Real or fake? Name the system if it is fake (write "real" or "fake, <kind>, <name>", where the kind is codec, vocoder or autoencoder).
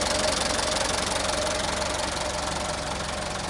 real